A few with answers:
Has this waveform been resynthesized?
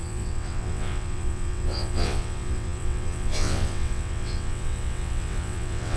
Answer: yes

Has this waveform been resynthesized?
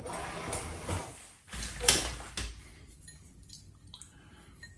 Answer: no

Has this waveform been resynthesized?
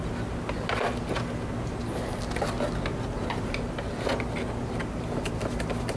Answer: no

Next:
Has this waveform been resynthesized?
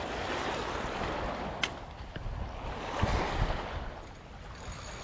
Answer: no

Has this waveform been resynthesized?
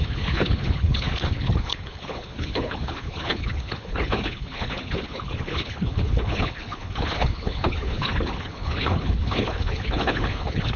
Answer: yes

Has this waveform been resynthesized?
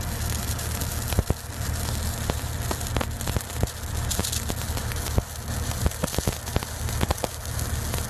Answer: no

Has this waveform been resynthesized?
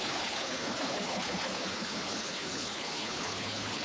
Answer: yes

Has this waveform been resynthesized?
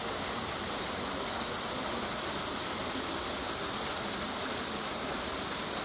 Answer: no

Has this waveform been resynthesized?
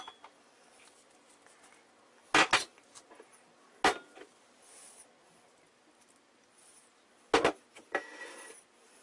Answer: no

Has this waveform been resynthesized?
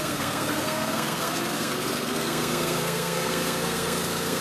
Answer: yes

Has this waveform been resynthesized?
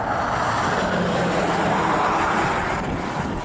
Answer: no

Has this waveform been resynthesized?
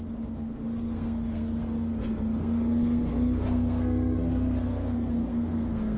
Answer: yes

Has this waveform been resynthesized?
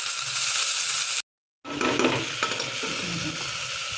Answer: no